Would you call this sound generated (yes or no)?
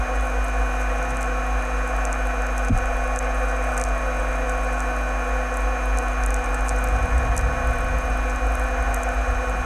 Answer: no